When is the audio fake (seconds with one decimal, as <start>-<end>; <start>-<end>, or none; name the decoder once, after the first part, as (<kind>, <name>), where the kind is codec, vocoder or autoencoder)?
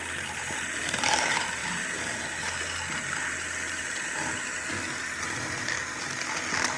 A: none